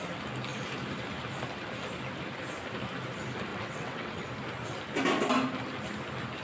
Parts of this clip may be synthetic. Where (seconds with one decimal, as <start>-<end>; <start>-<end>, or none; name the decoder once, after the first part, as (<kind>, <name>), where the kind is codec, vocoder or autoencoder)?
3.5-4.3 (vocoder, WaveNeXt)